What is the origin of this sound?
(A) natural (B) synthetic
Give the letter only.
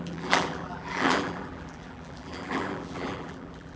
B